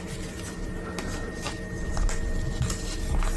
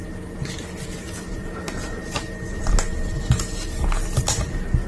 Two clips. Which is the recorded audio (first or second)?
first